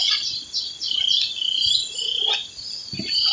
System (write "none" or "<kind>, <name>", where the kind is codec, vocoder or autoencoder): none